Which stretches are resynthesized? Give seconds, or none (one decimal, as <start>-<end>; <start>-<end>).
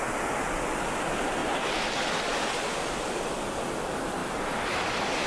none